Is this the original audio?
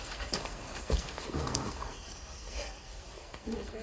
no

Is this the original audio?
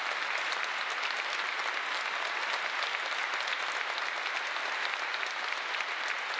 yes